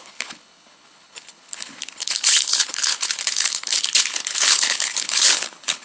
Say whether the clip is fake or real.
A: fake